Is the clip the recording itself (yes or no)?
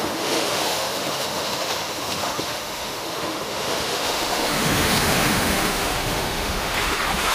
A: no